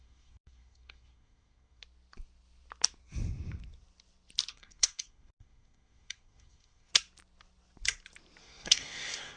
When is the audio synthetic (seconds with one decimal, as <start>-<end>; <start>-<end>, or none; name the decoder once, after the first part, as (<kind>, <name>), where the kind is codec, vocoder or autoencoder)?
0.0-1.8 (codec, SNAC); 4.5-6.9; 8.4-9.4